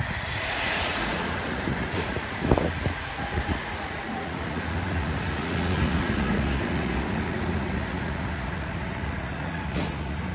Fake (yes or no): yes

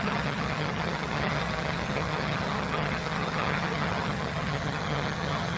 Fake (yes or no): yes